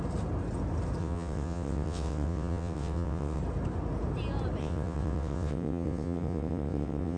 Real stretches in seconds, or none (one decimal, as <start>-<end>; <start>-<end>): 0.0-1.0; 3.4-4.6